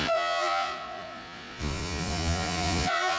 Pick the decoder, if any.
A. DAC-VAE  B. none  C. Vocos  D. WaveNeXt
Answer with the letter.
C